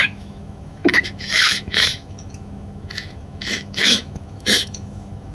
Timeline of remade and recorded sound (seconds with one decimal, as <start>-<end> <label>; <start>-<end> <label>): 0.0-5.3 remade